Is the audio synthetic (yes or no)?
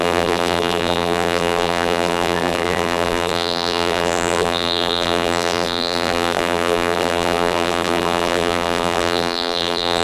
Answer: yes